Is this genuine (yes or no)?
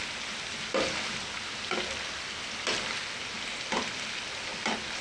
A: yes